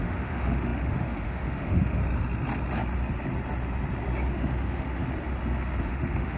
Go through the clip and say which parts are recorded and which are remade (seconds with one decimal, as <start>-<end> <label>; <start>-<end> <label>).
0.0-2.0 remade; 2.0-4.3 recorded; 4.3-5.0 remade; 5.0-5.8 recorded; 5.8-6.4 remade